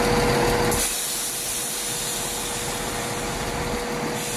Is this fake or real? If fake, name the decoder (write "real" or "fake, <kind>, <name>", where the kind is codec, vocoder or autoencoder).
real